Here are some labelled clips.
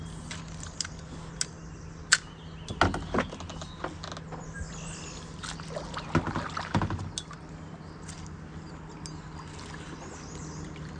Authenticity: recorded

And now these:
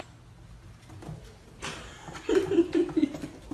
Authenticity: recorded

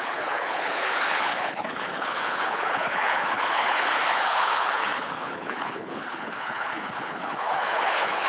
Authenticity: remade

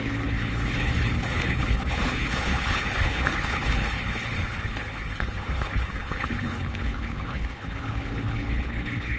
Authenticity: remade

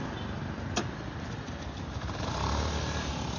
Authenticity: recorded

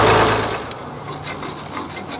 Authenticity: recorded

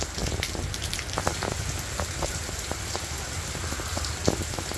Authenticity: recorded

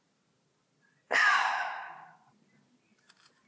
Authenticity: recorded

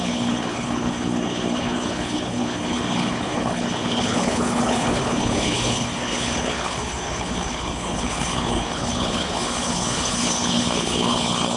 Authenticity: remade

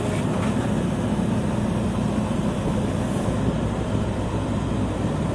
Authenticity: recorded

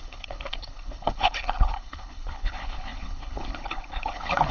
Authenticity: remade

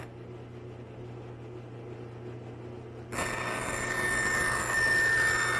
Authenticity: recorded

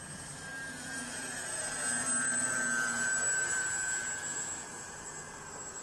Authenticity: recorded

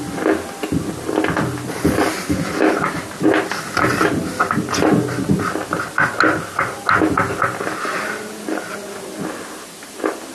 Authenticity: recorded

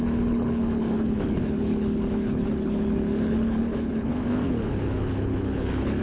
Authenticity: remade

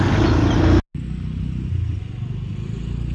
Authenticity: recorded